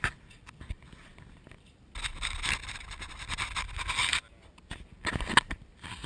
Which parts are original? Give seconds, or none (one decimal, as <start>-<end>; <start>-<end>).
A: 0.0-6.1